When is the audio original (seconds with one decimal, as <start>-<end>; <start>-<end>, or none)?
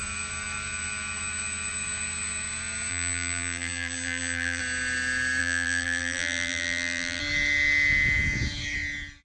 0.0-2.9; 4.6-5.4; 7.2-9.2